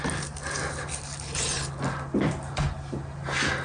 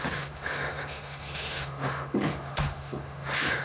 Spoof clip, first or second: second